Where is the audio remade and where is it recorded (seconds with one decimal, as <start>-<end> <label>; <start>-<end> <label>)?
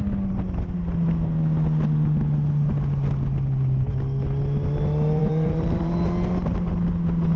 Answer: 0.0-5.2 recorded; 5.2-5.9 remade; 5.9-7.4 recorded